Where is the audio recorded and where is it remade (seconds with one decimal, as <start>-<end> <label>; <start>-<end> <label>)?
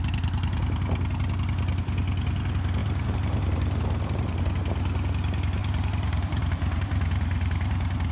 0.0-2.8 recorded; 2.8-4.4 remade; 4.4-5.6 recorded; 5.6-8.1 remade